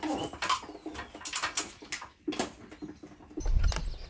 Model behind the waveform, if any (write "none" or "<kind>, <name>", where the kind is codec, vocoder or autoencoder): none